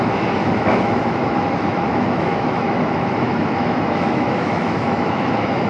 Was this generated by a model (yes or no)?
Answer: yes